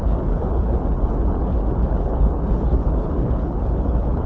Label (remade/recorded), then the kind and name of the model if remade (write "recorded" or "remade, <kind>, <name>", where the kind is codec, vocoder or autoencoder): remade, codec, HILCodec